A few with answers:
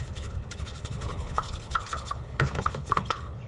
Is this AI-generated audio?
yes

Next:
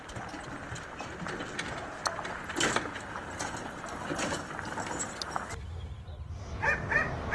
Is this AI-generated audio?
no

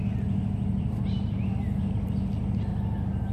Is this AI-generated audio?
no